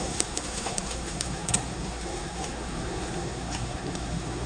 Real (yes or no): no